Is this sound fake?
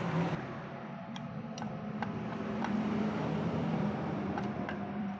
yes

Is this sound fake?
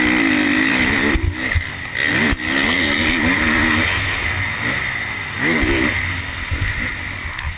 no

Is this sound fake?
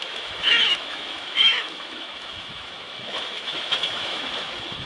yes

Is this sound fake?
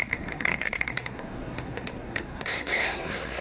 yes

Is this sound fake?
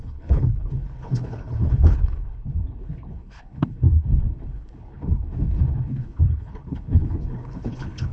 yes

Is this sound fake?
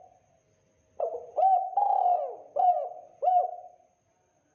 no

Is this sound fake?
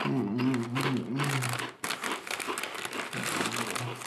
no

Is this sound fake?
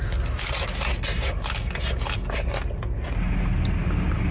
no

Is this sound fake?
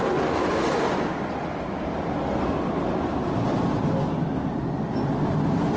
no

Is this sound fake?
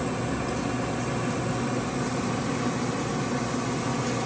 no